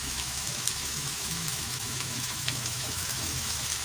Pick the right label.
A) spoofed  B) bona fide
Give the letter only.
A